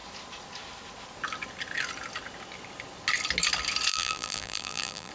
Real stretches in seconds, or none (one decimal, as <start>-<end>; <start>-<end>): 0.0-3.9